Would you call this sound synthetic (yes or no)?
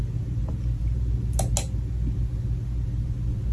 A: no